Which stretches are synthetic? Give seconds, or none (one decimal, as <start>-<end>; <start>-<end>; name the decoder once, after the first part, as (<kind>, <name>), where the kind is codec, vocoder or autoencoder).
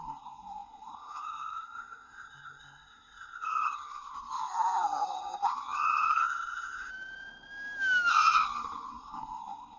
0.0-6.9 (codec, SNAC); 8.1-9.8